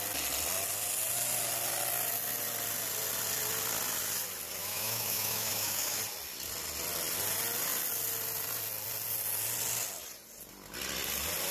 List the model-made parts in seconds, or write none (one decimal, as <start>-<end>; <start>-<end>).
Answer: 4.6-6.0